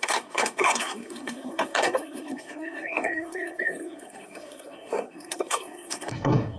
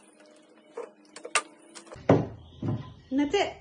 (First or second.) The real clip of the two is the second